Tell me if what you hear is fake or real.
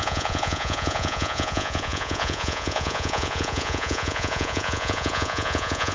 fake